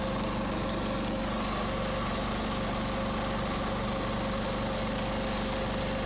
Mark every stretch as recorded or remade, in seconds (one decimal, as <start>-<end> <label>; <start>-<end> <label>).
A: 0.0-6.1 recorded